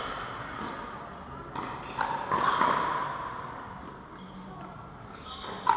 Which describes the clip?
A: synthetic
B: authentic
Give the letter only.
B